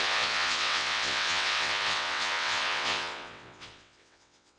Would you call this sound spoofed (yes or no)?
yes